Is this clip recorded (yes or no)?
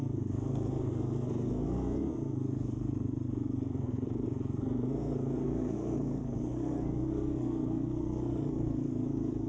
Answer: no